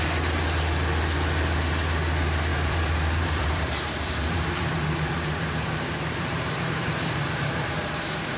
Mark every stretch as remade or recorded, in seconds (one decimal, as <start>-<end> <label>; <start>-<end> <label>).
0.0-2.5 recorded; 2.5-7.5 remade; 7.5-8.4 recorded